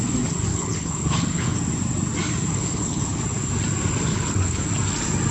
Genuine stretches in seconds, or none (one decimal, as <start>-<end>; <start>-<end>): 0.0-0.5; 1.6-2.5; 3.2-4.1; 4.6-5.3